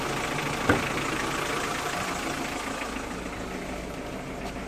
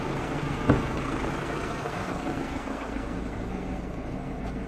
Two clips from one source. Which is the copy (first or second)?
second